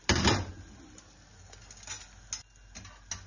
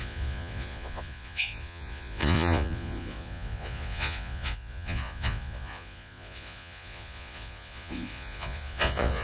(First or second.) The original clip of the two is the first